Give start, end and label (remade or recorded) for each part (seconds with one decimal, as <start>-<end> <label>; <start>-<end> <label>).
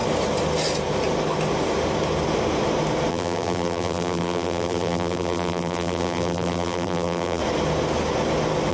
0.0-3.1 recorded; 3.1-7.4 remade; 7.4-8.7 recorded